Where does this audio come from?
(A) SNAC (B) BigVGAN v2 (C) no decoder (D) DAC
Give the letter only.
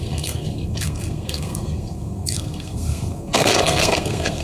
A